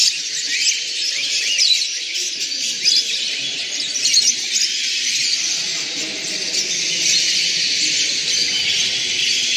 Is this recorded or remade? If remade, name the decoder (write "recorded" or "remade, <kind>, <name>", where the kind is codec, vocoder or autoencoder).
recorded